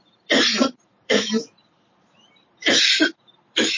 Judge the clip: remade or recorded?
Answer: remade